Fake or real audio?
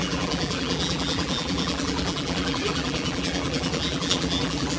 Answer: fake